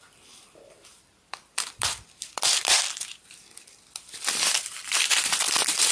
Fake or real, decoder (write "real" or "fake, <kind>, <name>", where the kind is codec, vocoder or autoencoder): fake, vocoder, BigVGAN v2